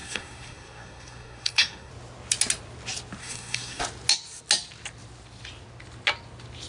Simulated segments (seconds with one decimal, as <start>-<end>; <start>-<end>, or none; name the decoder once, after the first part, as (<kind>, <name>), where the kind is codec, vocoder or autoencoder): 0.0-1.9 (codec, SNAC); 3.2-3.8

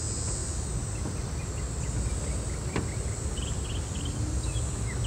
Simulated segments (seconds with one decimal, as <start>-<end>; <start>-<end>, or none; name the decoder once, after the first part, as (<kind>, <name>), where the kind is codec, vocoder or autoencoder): none

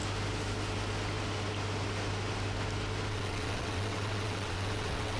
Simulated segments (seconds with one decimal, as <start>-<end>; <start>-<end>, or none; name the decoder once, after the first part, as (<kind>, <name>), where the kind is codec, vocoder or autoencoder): 3.1-5.2 (vocoder, WaveNeXt)

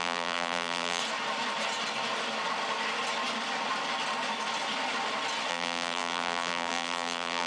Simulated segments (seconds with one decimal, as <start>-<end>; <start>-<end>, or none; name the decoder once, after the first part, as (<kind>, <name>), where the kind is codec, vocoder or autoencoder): 0.0-1.0 (vocoder, BigVGAN v2); 5.5-7.5

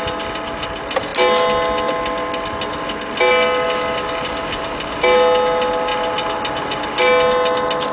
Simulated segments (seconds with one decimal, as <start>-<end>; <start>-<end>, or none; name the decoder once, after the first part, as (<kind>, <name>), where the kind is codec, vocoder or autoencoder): none

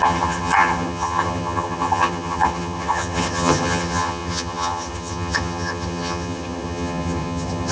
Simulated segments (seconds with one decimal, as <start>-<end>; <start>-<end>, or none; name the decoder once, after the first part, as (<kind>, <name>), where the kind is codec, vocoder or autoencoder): 0.0-7.7 (vocoder, HiFi-GAN)

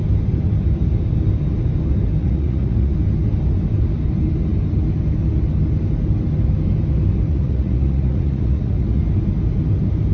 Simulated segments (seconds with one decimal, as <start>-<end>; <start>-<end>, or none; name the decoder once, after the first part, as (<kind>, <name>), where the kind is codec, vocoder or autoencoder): 2.2-2.9 (vocoder, Vocos); 7.3-9.0